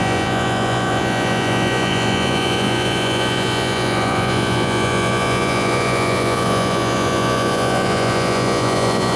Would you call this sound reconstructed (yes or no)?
yes